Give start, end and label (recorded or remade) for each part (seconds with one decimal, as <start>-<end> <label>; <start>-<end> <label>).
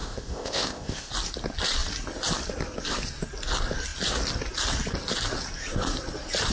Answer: 0.0-1.1 remade; 1.1-6.5 recorded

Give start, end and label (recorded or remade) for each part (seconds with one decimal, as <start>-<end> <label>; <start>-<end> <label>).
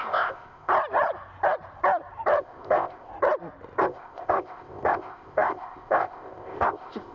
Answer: 0.0-0.7 remade; 0.7-2.4 recorded; 2.4-3.1 remade; 3.1-3.8 recorded; 3.8-7.1 remade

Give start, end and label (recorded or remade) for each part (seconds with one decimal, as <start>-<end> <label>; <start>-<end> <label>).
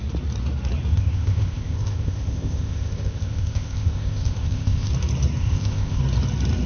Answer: 0.0-0.9 recorded; 0.9-4.9 remade; 4.9-5.4 recorded; 5.4-6.0 remade; 6.0-6.7 recorded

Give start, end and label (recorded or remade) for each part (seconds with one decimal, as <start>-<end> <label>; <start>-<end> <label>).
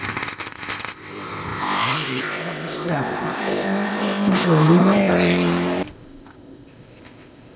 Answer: 0.0-5.1 remade; 5.1-5.9 recorded; 5.9-7.6 remade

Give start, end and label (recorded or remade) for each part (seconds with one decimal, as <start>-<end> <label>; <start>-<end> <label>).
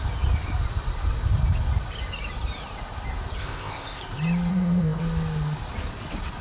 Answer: 0.0-3.4 recorded; 3.4-4.0 remade; 4.0-4.5 recorded; 4.5-5.0 remade; 5.0-6.4 recorded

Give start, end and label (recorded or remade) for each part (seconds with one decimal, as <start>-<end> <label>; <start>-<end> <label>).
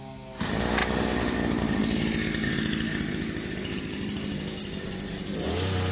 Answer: 0.0-5.9 recorded